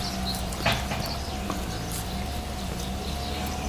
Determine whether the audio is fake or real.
real